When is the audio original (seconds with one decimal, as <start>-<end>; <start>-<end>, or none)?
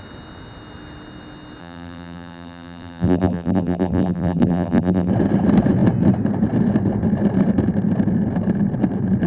0.0-1.6; 5.1-9.3